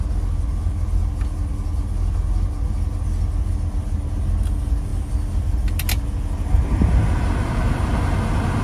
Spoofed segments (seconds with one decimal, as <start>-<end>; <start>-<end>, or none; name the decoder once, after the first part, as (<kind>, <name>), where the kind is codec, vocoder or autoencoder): none